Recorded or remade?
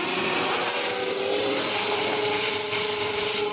remade